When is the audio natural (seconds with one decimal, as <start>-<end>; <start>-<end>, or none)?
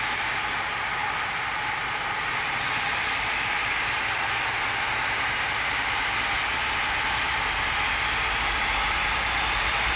0.0-10.0